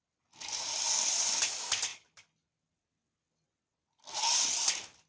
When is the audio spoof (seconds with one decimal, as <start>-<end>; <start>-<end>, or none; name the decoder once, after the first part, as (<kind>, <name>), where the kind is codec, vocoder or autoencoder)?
none